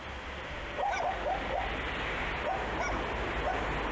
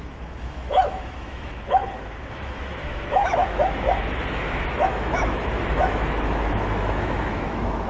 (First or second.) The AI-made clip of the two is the second